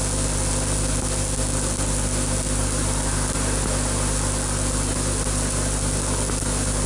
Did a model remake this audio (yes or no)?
no